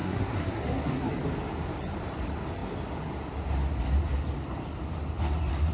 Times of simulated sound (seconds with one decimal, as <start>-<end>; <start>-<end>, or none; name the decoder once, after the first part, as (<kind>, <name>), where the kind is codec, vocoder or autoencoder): 0.0-1.1 (codec, SNAC)